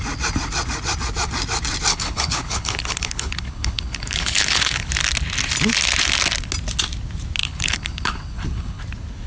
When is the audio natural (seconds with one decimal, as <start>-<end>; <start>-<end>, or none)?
0.0-1.9; 4.9-7.4; 8.8-9.3